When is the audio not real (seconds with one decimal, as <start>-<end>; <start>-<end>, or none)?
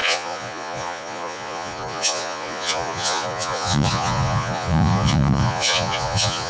0.0-6.5